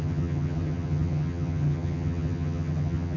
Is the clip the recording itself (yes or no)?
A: no